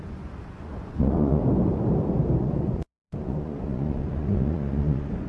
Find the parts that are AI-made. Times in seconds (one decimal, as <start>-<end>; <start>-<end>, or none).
0.0-1.4; 2.4-5.3